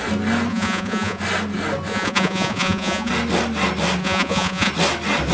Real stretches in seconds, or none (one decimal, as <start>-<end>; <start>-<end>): 0.0-0.5; 1.2-1.9; 3.1-4.0; 4.7-5.3